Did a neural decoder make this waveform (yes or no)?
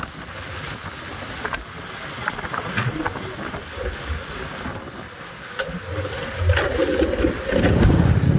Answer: no